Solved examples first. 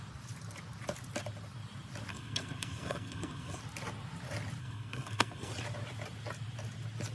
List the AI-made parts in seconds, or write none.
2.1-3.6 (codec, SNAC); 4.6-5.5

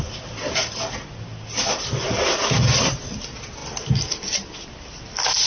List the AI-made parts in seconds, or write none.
none